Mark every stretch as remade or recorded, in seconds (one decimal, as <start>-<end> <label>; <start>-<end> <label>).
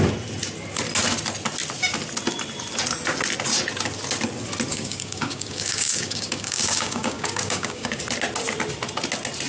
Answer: 0.0-4.7 recorded; 4.7-8.0 remade; 8.0-9.5 recorded